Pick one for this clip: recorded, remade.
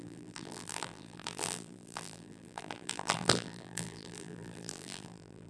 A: remade